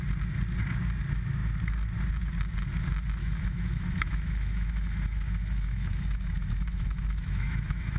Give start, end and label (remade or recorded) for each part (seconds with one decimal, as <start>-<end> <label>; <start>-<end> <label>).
0.0-3.2 recorded; 3.2-8.0 remade